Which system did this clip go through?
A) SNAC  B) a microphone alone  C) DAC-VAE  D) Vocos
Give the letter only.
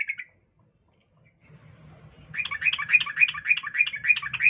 B